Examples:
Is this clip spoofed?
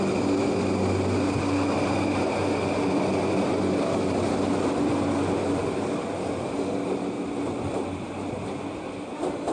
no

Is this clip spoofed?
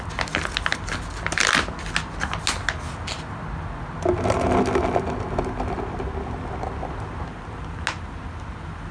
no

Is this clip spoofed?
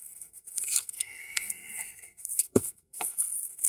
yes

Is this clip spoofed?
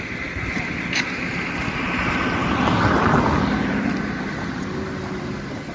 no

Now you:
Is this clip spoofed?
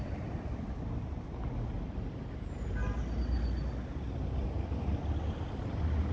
no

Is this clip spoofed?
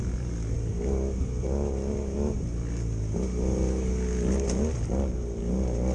no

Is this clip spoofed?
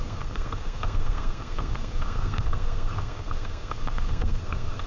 yes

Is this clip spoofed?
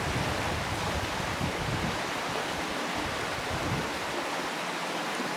no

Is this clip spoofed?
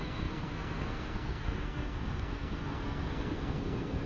yes